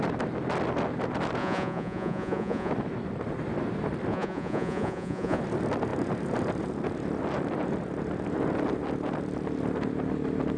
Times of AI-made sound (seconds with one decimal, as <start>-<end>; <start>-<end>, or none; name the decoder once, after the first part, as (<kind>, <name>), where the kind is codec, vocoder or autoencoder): 1.4-2.7 (vocoder, Vocos); 4.1-5.4